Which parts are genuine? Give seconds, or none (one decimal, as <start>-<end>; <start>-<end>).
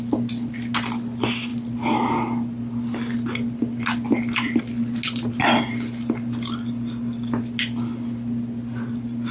0.0-9.3